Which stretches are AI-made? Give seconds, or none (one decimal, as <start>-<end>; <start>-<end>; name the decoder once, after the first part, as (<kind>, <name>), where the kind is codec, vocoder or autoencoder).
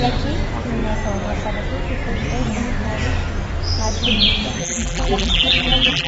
4.6-6.1 (vocoder, BigVGAN v2)